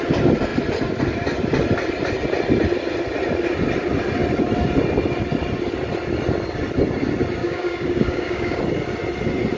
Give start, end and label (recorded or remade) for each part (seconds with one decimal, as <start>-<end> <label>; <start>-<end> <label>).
0.0-7.4 recorded; 7.4-8.6 remade; 8.6-9.6 recorded